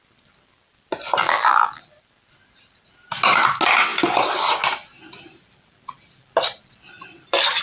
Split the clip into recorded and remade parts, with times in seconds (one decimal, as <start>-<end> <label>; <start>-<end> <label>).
0.0-1.2 recorded; 1.2-1.8 remade; 1.8-7.6 recorded